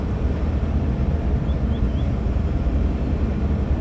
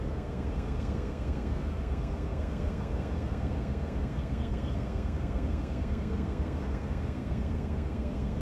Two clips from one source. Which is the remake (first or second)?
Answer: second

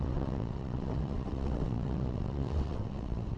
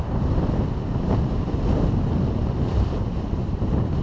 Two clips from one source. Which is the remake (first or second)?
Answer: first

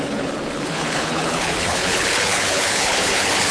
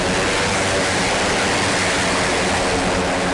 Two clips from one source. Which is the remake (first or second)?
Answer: first